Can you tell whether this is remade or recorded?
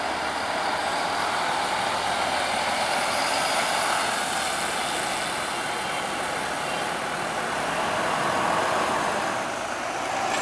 recorded